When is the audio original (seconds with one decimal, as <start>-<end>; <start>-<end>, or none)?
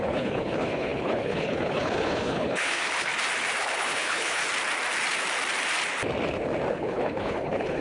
3.1-3.6; 4.4-6.7